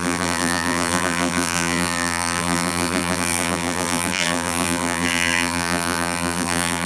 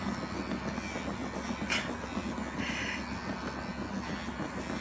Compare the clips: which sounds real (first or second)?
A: second